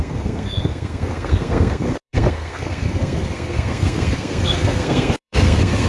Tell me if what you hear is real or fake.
fake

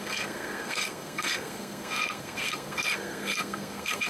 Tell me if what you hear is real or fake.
fake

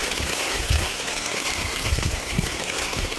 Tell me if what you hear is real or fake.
fake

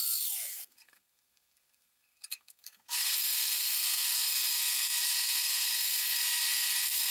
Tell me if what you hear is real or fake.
fake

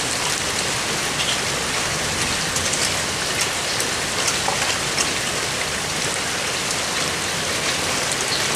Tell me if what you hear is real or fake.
real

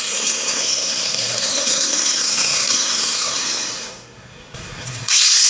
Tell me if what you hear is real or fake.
fake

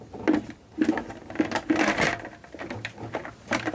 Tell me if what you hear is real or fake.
real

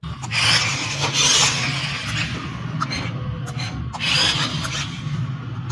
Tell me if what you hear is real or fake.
real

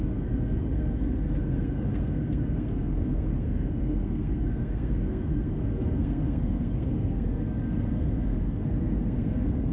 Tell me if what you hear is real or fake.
fake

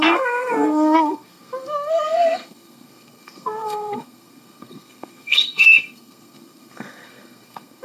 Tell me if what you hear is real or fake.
fake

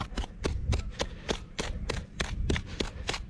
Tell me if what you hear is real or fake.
real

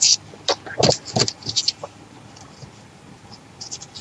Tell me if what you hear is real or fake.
real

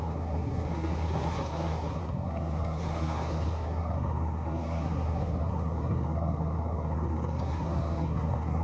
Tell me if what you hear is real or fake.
fake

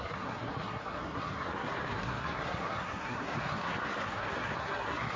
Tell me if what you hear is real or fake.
fake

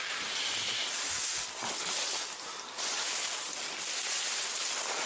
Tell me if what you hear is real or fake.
real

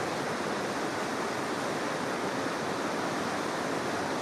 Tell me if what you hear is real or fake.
real